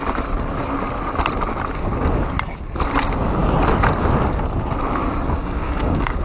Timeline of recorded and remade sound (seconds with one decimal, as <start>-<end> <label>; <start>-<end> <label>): 0.0-5.4 recorded; 5.4-6.2 remade